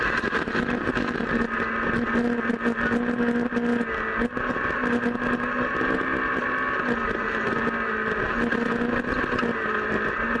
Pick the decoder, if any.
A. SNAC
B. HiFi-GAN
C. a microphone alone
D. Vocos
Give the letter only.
C